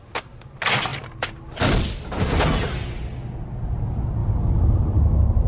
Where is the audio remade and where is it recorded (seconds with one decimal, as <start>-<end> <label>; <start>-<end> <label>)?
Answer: 0.0-0.9 recorded; 0.9-1.4 remade; 1.4-4.2 recorded; 4.2-5.0 remade; 5.0-5.5 recorded